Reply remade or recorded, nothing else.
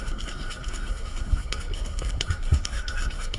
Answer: remade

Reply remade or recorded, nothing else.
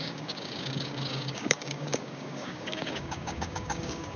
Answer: remade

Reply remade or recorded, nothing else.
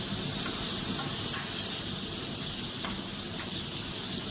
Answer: recorded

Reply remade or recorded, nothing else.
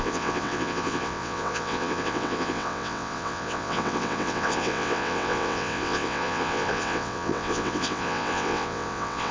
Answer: remade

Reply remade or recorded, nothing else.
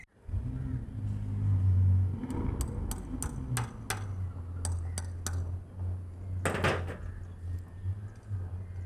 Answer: recorded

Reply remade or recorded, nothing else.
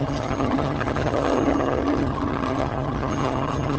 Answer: remade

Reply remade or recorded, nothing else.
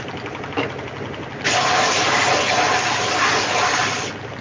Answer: recorded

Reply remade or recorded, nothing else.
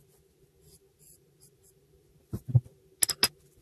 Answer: recorded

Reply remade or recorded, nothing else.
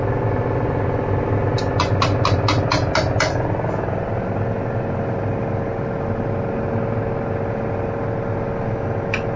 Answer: recorded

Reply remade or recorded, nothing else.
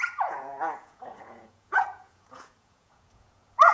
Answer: remade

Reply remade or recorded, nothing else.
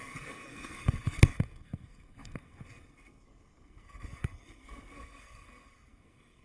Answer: remade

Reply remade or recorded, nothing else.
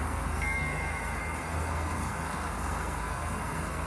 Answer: remade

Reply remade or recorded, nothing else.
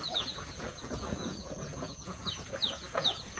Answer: remade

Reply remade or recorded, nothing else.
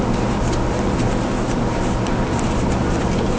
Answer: recorded